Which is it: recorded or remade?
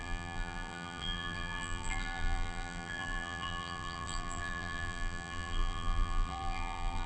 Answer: remade